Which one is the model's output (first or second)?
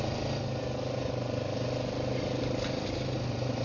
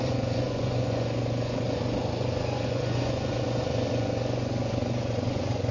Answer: second